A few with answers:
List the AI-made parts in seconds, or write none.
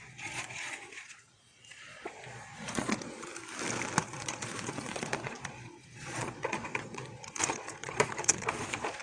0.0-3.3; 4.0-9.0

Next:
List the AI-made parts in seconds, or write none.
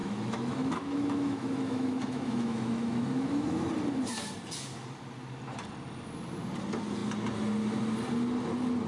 0.0-3.7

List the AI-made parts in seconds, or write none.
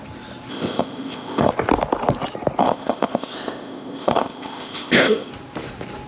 0.5-1.5; 2.6-5.3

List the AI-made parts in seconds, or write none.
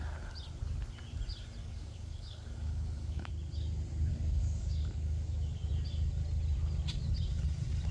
1.6-3.3; 4.1-5.7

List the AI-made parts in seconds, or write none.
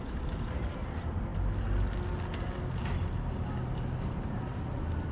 none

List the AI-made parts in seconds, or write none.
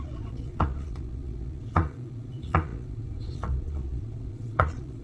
0.0-5.0